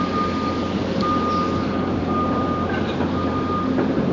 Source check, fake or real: real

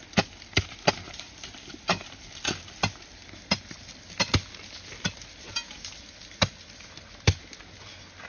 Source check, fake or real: real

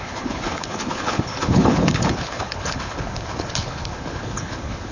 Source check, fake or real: fake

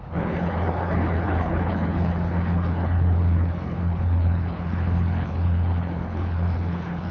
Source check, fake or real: fake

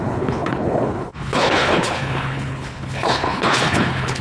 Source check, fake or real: fake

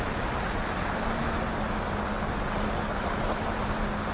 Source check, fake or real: real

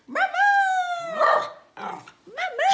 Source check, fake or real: real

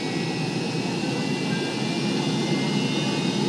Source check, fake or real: real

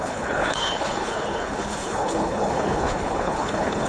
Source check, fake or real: fake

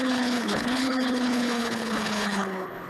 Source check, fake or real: fake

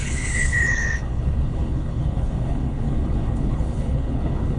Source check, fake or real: fake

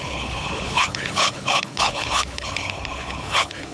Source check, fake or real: fake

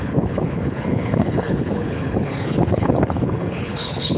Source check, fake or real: fake